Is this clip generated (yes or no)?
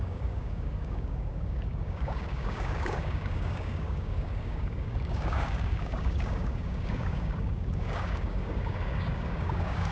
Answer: yes